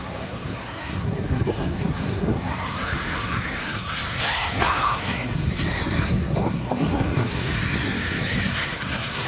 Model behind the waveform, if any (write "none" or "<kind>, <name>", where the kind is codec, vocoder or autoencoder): codec, SNAC